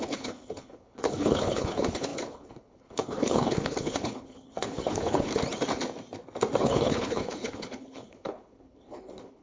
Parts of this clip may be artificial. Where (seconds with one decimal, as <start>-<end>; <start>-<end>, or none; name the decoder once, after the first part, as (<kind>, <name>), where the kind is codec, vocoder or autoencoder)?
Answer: 0.0-5.3 (codec, HILCodec); 6.6-9.4